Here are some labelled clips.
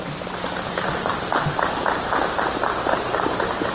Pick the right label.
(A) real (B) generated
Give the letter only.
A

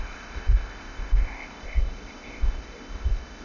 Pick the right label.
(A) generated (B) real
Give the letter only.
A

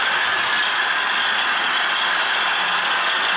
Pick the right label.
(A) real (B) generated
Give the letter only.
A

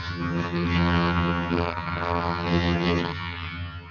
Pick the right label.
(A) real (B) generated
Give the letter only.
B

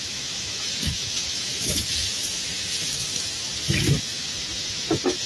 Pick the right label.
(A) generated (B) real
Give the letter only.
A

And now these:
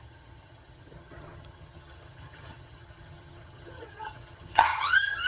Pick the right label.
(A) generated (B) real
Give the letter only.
A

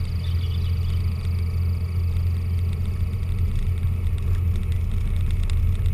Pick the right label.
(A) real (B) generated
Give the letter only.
A